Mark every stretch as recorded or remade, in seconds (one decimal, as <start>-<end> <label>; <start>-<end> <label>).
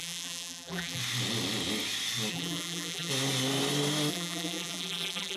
0.0-1.0 remade; 1.0-2.3 recorded; 2.3-3.1 remade; 3.1-4.1 recorded; 4.1-5.4 remade